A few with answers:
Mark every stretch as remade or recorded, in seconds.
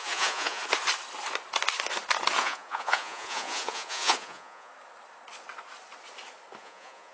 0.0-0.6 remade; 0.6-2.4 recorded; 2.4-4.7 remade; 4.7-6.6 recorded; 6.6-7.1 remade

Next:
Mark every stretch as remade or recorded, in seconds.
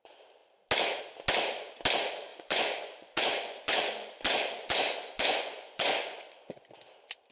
0.0-2.3 recorded; 2.3-6.7 remade; 6.7-7.3 recorded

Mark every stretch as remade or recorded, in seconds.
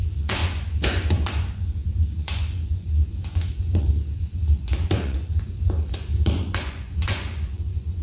0.0-8.0 remade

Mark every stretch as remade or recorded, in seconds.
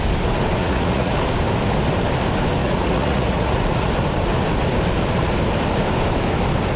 0.0-0.6 recorded; 0.6-1.2 remade; 1.2-2.6 recorded; 2.6-3.9 remade; 3.9-6.8 recorded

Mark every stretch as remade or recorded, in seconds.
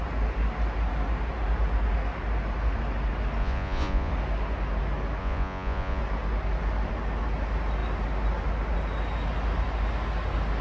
0.0-3.4 recorded; 3.4-4.1 remade; 4.1-5.2 recorded; 5.2-6.0 remade; 6.0-10.6 recorded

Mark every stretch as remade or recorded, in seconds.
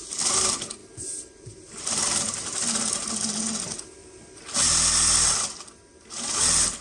0.0-6.8 recorded